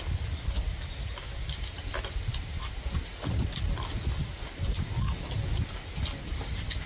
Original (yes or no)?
yes